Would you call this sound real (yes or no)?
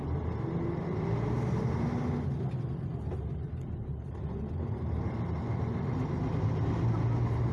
yes